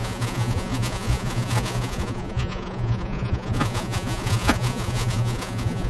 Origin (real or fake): fake